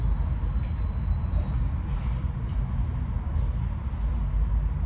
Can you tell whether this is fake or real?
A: real